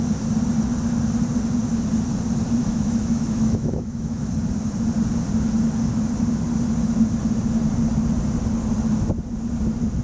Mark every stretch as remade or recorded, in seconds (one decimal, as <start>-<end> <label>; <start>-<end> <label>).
0.0-2.6 recorded; 2.6-4.3 remade; 4.3-10.0 recorded